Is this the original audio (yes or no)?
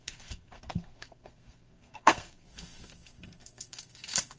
no